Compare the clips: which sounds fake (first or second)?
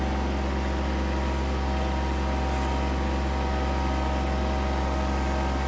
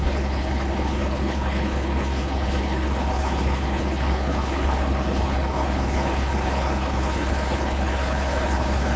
second